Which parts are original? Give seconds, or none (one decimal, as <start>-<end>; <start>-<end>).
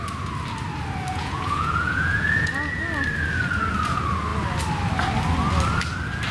0.0-1.1; 2.8-6.3